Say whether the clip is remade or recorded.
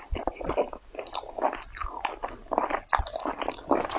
recorded